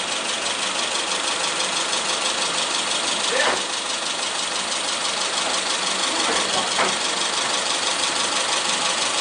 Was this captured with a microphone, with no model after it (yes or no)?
yes